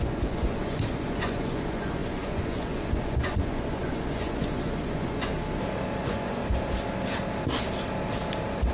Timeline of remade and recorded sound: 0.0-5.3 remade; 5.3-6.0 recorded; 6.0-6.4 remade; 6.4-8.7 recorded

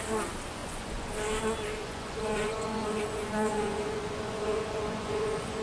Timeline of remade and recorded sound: 0.0-0.6 recorded; 0.6-1.1 remade; 1.1-1.8 recorded; 1.8-5.6 remade